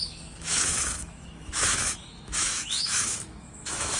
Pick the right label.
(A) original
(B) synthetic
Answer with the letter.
B